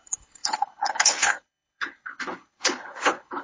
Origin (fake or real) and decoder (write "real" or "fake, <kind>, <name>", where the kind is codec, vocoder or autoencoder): fake, codec, HILCodec